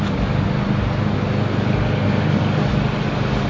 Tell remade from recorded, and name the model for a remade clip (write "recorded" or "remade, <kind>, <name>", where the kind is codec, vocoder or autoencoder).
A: recorded